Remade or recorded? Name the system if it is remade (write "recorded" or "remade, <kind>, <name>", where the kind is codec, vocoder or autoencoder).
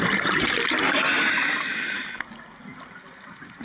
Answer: recorded